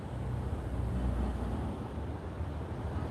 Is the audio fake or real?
real